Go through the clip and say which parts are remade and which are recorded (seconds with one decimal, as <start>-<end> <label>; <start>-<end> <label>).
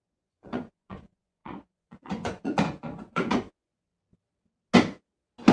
0.0-3.9 remade; 3.9-5.5 recorded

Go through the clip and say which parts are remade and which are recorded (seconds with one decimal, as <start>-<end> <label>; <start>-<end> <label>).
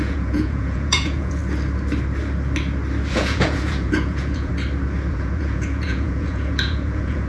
0.0-1.4 remade; 1.4-3.1 recorded; 3.1-4.5 remade; 4.5-5.1 recorded; 5.1-7.3 remade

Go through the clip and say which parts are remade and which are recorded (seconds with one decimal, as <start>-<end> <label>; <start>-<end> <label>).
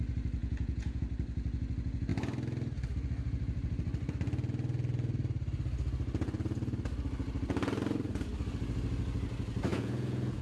0.0-0.4 recorded; 0.4-1.0 remade; 1.0-9.7 recorded; 9.7-10.4 remade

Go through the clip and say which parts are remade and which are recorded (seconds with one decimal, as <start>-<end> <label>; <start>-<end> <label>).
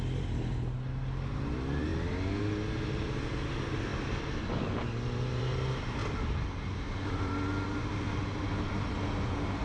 0.0-9.6 recorded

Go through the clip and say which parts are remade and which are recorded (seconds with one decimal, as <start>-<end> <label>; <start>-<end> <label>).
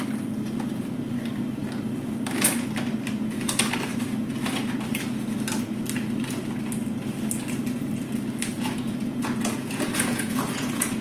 0.0-8.5 recorded; 8.5-11.0 remade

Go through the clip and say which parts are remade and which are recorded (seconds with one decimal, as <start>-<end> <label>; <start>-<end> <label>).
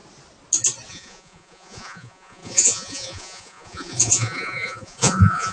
0.0-0.9 recorded; 0.9-5.5 remade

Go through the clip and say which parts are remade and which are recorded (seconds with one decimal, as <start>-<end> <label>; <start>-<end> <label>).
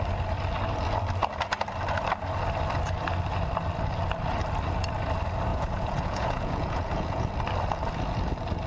0.0-5.5 recorded; 5.5-7.3 remade; 7.3-8.7 recorded